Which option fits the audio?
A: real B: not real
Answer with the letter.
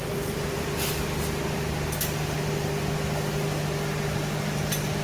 A